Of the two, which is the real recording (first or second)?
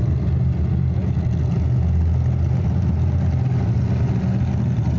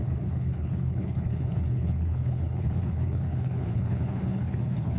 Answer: first